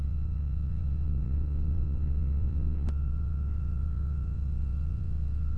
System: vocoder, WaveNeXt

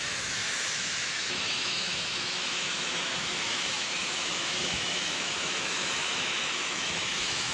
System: autoencoder, DAC-VAE